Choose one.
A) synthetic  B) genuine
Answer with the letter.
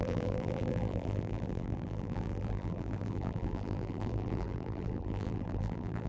A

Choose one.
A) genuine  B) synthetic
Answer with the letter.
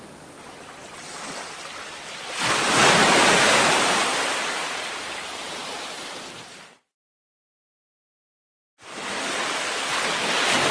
B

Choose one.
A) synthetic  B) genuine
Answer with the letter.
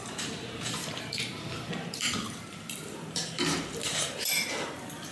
A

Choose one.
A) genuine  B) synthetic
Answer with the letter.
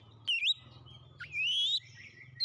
A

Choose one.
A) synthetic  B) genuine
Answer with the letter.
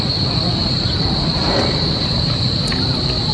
A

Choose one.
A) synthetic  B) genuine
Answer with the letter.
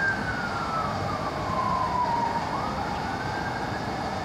A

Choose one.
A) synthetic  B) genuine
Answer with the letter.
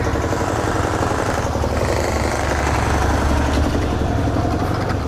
B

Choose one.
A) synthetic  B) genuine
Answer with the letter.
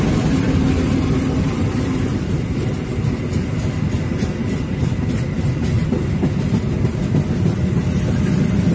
B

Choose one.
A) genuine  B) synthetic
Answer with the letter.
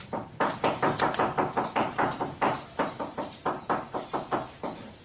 B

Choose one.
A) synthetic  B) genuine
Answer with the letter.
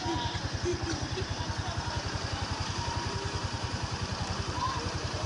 A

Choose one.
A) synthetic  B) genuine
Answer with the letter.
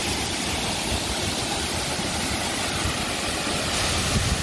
B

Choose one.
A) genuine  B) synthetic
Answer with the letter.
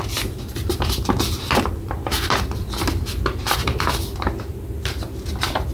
B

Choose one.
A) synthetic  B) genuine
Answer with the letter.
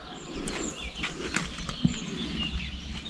B